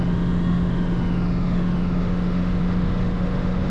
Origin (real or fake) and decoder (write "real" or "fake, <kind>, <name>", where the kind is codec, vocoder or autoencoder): fake, autoencoder, DAC-VAE